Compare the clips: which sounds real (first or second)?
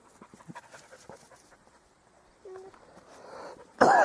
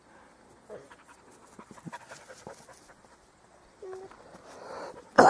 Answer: second